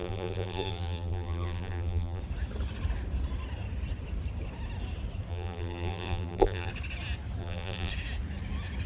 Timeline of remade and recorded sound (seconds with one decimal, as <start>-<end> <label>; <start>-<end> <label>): 0.0-2.2 remade; 2.2-5.3 recorded; 5.3-6.7 remade; 6.7-7.4 recorded; 7.4-7.9 remade; 7.9-8.9 recorded